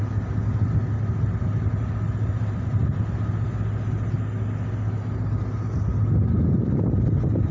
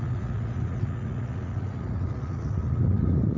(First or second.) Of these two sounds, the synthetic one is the second